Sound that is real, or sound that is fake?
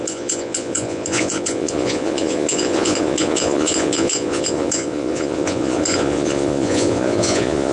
fake